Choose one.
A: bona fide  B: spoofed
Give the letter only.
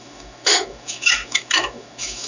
B